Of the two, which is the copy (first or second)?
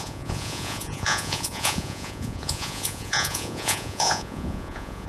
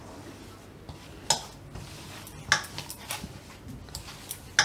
first